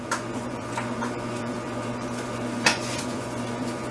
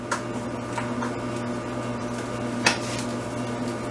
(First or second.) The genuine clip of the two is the second